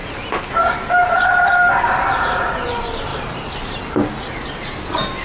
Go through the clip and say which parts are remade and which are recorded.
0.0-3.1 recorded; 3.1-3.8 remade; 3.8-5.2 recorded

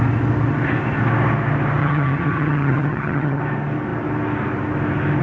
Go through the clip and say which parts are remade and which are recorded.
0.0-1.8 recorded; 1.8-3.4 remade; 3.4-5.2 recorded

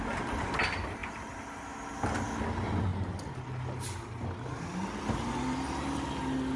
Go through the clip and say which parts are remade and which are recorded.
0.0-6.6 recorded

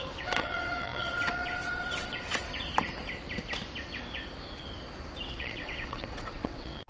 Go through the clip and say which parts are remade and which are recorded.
0.0-2.4 remade; 2.4-5.4 recorded; 5.4-6.9 remade